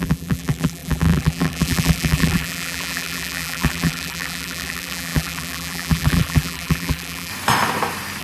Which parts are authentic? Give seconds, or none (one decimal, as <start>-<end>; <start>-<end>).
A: 7.3-8.2